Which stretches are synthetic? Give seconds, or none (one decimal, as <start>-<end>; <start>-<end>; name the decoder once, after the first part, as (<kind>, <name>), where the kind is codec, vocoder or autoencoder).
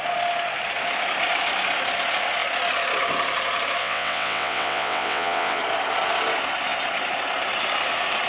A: 3.8-5.6 (vocoder, WaveNeXt)